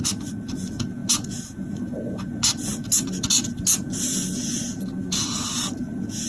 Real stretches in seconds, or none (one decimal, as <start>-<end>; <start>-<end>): 0.0-6.3